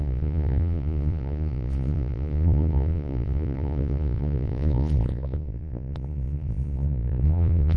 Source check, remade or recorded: remade